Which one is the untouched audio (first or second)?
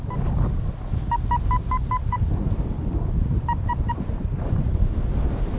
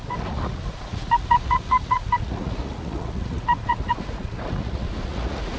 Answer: first